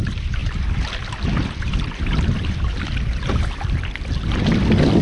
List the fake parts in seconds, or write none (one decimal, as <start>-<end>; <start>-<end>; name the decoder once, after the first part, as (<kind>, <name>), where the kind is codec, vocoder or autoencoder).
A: none